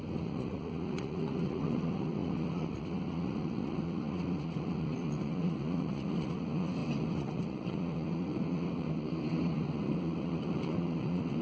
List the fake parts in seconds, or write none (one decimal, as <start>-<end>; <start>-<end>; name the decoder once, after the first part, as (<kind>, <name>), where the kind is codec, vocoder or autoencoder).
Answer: 0.0-11.4 (vocoder, Vocos)